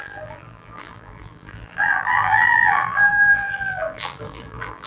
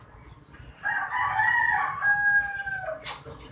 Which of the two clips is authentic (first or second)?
second